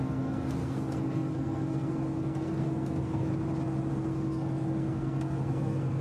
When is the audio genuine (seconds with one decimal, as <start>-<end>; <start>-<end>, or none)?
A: 3.3-3.9